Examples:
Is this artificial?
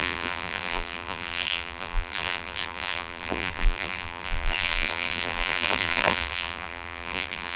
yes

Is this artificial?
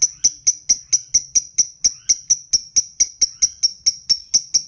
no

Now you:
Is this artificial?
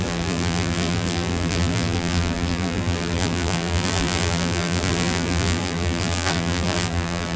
yes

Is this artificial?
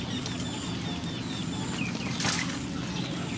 no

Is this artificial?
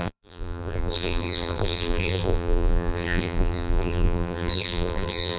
yes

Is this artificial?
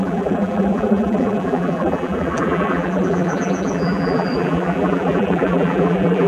yes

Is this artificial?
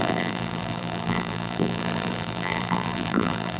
yes